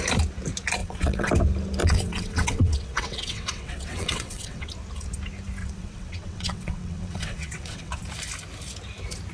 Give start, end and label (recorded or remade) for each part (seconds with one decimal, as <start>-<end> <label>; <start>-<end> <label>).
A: 0.0-0.8 recorded; 0.8-1.3 remade; 1.3-1.8 recorded; 1.8-4.7 remade; 4.7-5.6 recorded; 5.6-8.0 remade; 8.0-9.3 recorded